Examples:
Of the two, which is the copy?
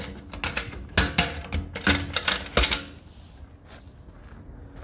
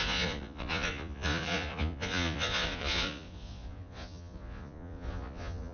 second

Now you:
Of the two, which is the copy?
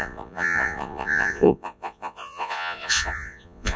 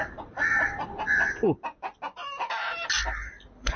first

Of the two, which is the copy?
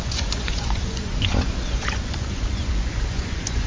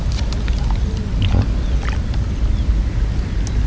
first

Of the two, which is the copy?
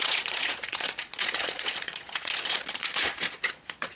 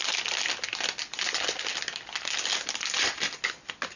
first